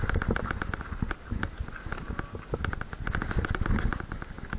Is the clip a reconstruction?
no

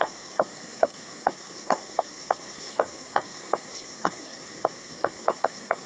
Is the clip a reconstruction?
yes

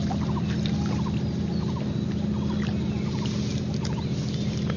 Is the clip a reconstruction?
no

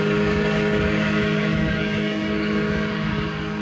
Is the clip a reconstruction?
yes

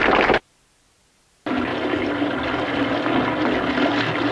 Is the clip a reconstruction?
no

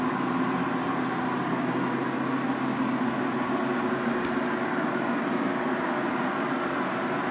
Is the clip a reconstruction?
no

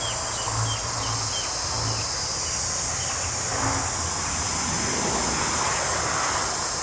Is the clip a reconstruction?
no